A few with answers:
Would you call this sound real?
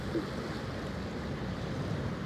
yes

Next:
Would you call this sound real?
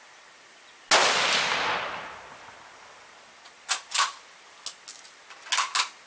yes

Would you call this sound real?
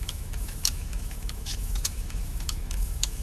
no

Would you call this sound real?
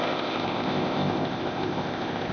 no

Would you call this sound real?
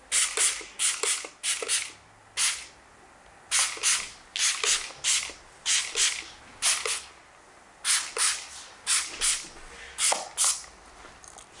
yes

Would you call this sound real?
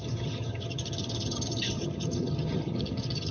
no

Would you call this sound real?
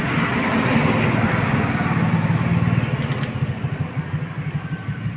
yes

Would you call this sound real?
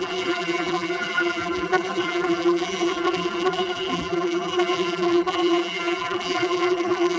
no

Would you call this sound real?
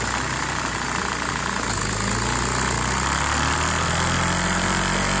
yes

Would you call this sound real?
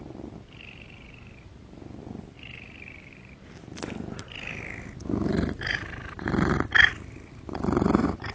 yes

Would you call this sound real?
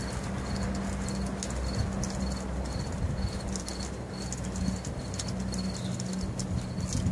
yes